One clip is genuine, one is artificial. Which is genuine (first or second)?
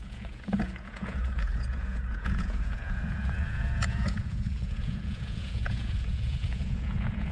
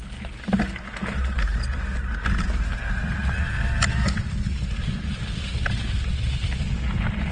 second